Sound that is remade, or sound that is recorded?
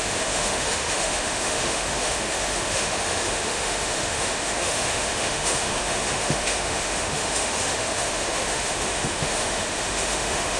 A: remade